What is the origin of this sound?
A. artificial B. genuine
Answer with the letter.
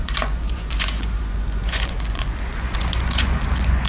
A